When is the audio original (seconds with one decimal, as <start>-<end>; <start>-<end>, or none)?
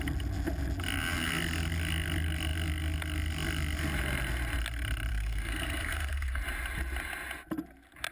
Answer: 0.0-5.1; 6.4-8.1